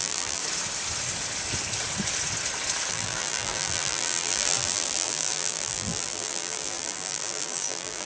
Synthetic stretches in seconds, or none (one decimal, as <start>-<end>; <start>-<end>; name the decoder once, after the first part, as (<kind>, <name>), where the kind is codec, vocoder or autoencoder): 0.0-0.4 (vocoder, BigVGAN v2); 2.9-8.1